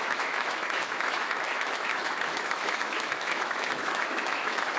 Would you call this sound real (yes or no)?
no